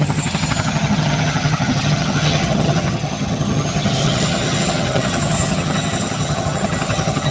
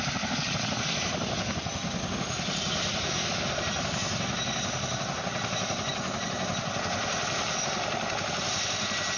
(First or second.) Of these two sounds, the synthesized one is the first